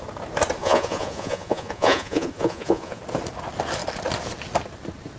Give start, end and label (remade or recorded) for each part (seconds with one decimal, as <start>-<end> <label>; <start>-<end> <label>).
0.0-0.6 recorded; 0.6-3.0 remade; 3.0-5.2 recorded